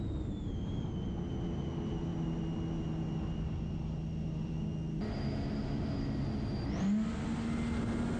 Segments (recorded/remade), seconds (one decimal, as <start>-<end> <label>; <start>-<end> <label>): 0.0-8.2 recorded